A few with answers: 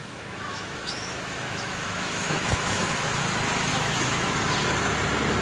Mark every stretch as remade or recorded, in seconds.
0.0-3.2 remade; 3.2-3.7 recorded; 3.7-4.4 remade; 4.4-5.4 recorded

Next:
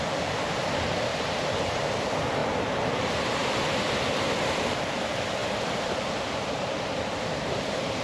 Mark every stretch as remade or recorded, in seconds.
0.0-1.1 remade; 1.1-1.7 recorded; 1.7-2.4 remade; 2.4-3.0 recorded; 3.0-8.0 remade

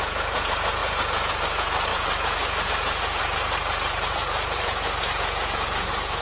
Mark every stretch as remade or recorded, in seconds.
0.0-3.2 remade; 3.2-3.7 recorded; 3.7-6.2 remade

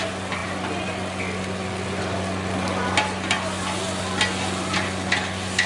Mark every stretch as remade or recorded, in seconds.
0.0-5.7 recorded

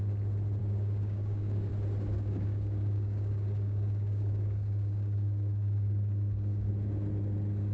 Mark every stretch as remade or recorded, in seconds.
0.0-0.6 recorded; 0.6-1.7 remade; 1.7-2.1 recorded; 2.1-6.7 remade; 6.7-7.7 recorded

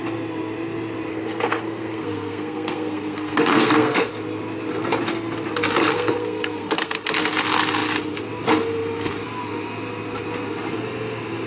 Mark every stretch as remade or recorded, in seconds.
0.0-1.1 recorded; 1.1-4.1 remade; 4.1-5.8 recorded; 5.8-6.9 remade; 6.9-11.5 recorded